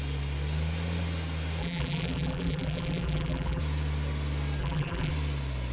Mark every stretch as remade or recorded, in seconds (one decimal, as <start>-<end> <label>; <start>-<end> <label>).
0.0-1.6 recorded; 1.6-3.6 remade; 3.6-4.6 recorded; 4.6-5.1 remade; 5.1-5.7 recorded